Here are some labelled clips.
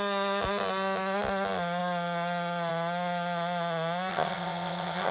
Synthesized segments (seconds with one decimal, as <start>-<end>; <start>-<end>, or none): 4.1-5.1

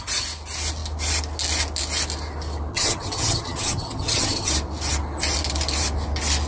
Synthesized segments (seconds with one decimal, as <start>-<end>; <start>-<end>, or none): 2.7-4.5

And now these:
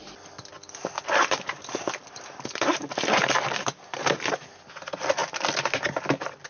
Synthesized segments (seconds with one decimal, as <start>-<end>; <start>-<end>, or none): none

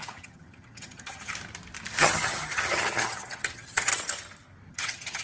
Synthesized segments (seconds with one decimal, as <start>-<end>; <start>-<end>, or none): 0.0-1.3; 2.0-3.9; 4.7-5.2

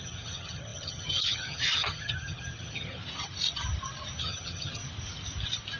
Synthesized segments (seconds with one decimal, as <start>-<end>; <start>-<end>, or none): 0.0-3.0; 4.2-4.8